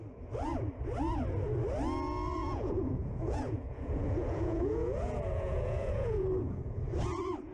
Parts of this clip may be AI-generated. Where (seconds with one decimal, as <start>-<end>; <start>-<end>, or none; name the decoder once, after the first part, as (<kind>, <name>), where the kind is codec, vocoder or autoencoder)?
2.4-6.8 (vocoder, Vocos)